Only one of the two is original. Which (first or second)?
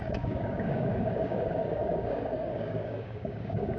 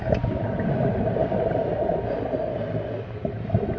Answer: second